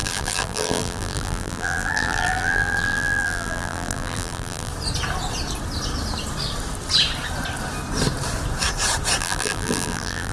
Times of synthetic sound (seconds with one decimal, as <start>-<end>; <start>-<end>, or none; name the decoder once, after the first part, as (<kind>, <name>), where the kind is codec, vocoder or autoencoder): 0.0-4.7 (vocoder, BigVGAN v2); 9.2-10.3